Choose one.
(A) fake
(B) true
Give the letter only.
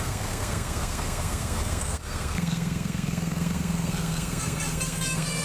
A